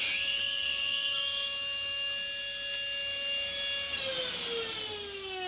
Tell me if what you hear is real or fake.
real